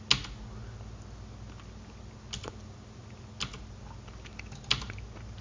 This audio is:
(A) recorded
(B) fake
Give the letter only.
A